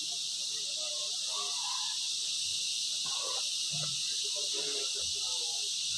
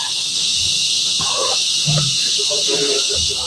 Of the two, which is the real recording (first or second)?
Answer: first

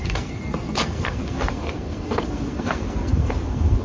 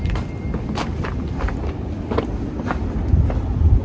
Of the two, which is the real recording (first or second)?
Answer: second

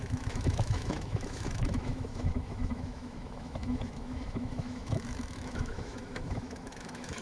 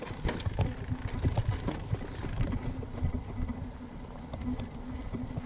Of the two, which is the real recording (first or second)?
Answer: second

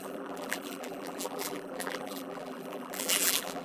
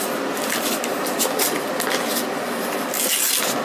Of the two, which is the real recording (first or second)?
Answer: second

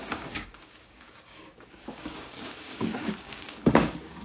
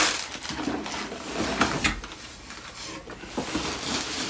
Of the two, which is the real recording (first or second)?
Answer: second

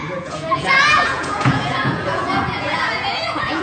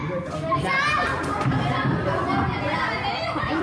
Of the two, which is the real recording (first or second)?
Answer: second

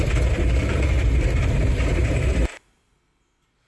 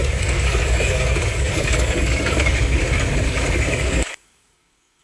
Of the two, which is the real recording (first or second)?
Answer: first